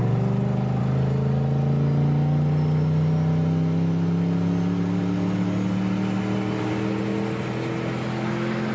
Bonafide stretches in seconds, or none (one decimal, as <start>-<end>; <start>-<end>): 0.0-8.7